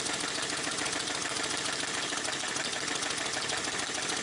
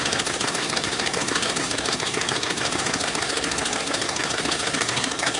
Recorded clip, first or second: first